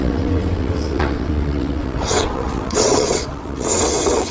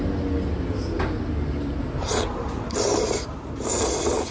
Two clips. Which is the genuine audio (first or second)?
second